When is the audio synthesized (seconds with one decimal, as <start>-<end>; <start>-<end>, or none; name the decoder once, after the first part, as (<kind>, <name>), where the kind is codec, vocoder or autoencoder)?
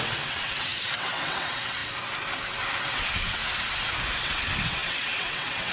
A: 0.0-1.8 (vocoder, WaveNeXt); 2.8-3.4; 4.2-5.7